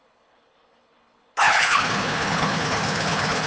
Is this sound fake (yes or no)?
yes